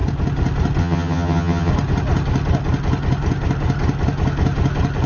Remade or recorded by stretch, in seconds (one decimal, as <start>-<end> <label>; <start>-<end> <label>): 0.0-0.8 recorded; 0.8-1.7 remade; 1.7-5.1 recorded